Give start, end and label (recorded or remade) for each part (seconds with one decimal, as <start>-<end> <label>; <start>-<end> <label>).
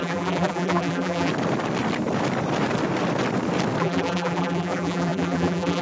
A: 0.0-1.3 remade; 1.3-3.8 recorded; 3.8-5.8 remade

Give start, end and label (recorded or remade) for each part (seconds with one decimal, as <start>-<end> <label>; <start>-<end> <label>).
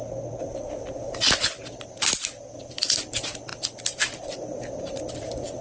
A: 0.0-5.6 recorded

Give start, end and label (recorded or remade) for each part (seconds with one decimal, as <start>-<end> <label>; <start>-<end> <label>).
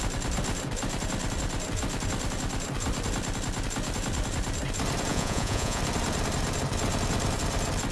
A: 0.0-5.1 recorded; 5.1-5.8 remade; 5.8-7.9 recorded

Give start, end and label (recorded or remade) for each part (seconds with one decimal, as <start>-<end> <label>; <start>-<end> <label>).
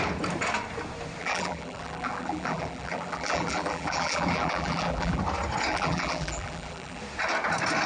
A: 0.0-1.2 recorded; 1.2-5.2 remade; 5.2-5.7 recorded; 5.7-7.0 remade; 7.0-7.9 recorded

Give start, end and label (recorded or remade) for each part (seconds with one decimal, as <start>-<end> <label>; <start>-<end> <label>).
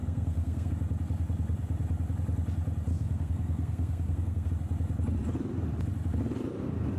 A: 0.0-0.7 remade; 0.7-2.9 recorded; 2.9-4.5 remade; 4.5-7.0 recorded